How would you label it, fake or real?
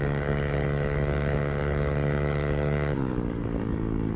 fake